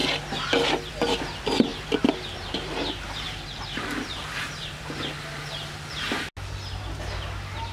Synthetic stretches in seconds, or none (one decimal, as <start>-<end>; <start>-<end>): 1.7-5.1